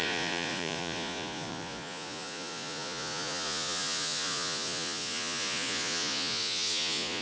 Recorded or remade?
remade